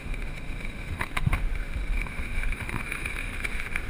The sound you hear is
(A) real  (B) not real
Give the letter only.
B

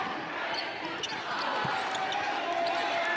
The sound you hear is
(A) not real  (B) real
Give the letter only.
B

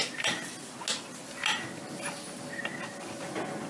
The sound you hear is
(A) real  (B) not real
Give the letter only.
A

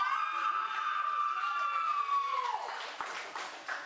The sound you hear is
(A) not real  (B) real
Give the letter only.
B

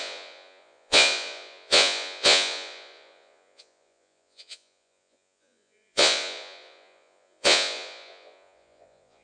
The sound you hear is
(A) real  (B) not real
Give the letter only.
B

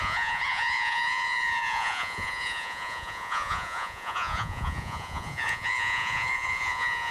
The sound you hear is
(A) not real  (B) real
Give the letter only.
A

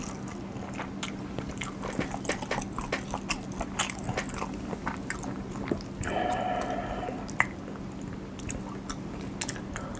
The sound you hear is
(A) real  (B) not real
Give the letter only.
A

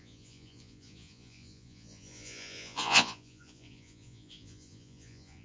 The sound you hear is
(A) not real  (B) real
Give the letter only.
A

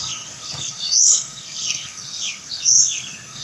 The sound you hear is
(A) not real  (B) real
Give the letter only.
A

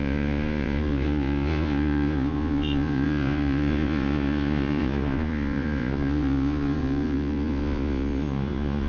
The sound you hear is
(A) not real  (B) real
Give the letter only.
A